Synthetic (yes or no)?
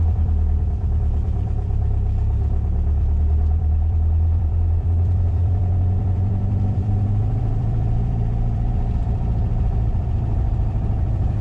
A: yes